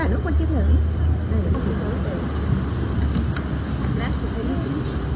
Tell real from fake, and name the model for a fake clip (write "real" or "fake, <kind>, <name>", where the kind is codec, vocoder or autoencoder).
real